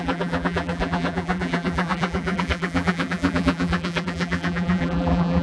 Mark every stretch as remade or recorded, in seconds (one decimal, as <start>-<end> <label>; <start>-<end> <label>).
0.0-5.4 remade